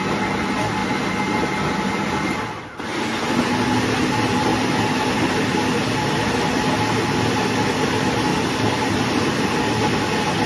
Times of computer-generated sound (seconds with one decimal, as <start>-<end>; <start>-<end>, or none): 8.3-9.9